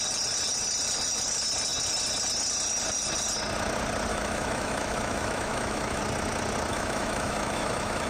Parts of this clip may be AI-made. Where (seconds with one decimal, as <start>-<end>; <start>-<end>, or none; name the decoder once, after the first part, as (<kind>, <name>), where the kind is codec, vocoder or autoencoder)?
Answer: 4.1-6.0 (autoencoder, DAC-VAE); 6.7-8.1